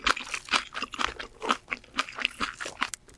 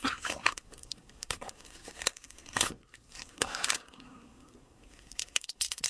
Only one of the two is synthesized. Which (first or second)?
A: second